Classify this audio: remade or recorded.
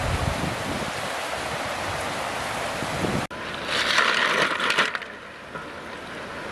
recorded